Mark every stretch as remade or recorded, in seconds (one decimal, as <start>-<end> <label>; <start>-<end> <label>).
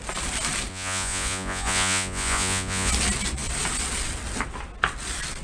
0.0-0.7 recorded; 0.7-2.9 remade; 2.9-5.4 recorded